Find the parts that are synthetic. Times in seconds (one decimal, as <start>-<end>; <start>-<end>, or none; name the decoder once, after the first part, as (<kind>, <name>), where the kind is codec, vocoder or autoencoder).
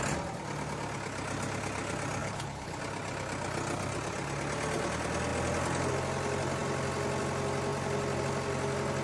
2.2-2.8 (codec, HILCodec)